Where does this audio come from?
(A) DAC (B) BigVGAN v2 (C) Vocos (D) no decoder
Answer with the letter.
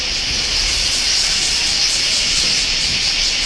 C